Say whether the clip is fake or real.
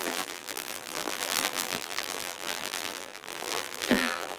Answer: fake